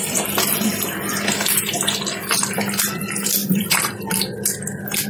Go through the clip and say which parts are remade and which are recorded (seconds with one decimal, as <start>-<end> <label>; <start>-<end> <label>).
0.0-3.4 recorded; 3.4-4.0 remade; 4.0-5.1 recorded